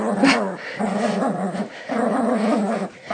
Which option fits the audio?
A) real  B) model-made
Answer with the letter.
A